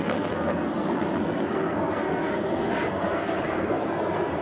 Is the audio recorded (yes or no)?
no